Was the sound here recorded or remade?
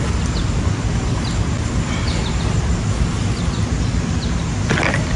recorded